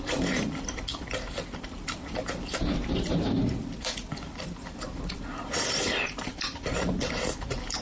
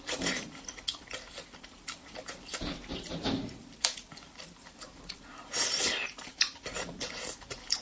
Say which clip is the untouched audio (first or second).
second